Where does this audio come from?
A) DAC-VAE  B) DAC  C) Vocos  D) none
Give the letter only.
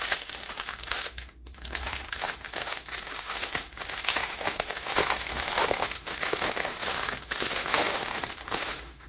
A